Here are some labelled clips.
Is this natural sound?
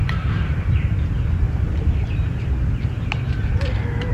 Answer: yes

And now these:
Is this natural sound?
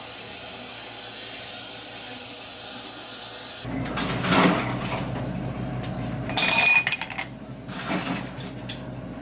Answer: yes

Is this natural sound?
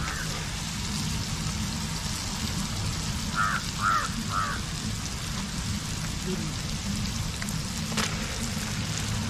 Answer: yes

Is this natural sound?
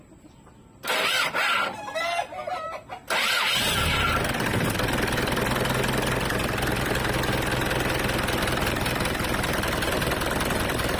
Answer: yes